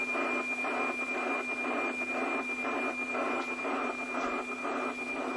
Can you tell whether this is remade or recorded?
recorded